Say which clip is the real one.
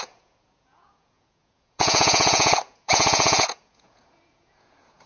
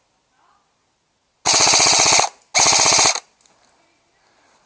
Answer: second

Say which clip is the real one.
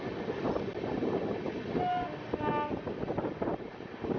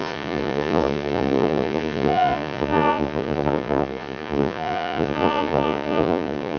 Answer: first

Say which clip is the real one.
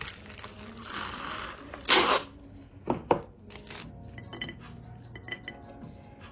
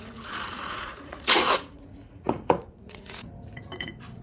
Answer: first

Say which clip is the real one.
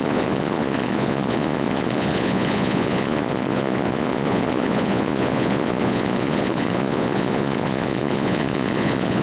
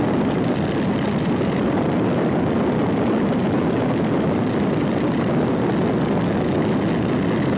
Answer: second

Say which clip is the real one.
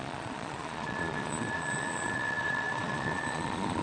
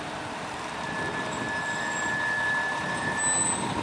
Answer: second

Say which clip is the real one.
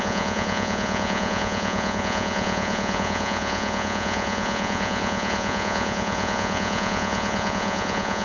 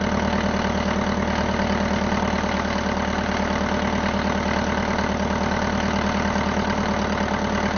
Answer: second